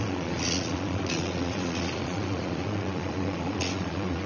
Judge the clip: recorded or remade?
remade